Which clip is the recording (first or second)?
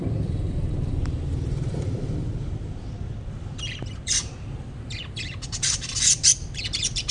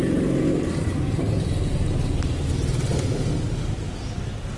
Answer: second